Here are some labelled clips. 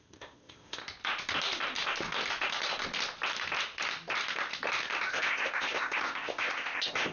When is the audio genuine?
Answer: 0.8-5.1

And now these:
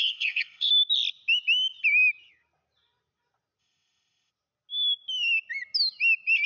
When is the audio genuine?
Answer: 0.7-3.6; 4.3-6.5

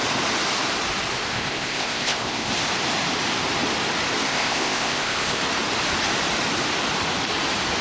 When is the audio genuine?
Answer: 0.0-1.3; 2.5-4.3; 5.4-7.8

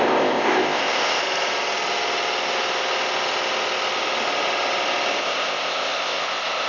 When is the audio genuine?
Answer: 1.2-5.2

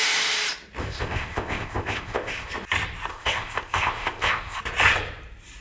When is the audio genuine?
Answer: 0.0-0.8; 2.5-3.1; 4.6-5.6

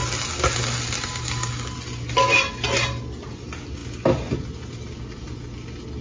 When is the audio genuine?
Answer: 0.0-6.0

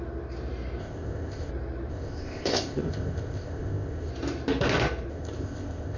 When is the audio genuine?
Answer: 0.0-0.8; 1.5-1.9; 4.1-5.1

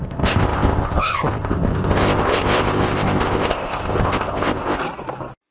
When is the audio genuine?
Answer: 4.8-5.5